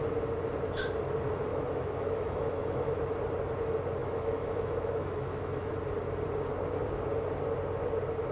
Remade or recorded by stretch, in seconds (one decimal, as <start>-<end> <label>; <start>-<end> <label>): 0.0-1.5 recorded; 1.5-3.0 remade; 3.0-4.0 recorded; 4.0-5.7 remade; 5.7-8.3 recorded